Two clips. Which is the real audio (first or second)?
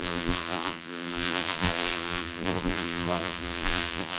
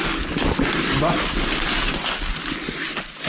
second